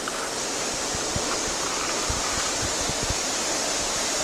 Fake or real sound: real